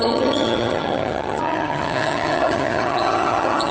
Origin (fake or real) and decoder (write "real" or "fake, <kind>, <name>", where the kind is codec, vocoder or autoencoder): fake, vocoder, HiFi-GAN